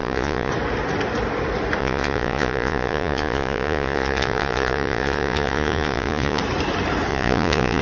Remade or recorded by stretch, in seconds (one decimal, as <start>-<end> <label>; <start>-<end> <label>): 0.0-0.5 remade; 0.5-1.8 recorded; 1.8-6.4 remade; 6.4-7.1 recorded; 7.1-7.8 remade